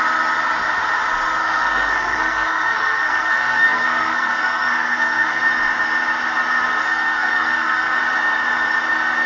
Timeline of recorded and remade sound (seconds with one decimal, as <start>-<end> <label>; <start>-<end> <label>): 0.0-1.4 recorded; 1.4-5.4 remade; 5.4-6.8 recorded; 6.8-8.0 remade; 8.0-9.3 recorded